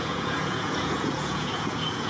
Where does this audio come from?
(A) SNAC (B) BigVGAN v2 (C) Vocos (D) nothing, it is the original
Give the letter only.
C